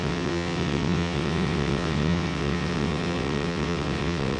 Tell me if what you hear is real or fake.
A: fake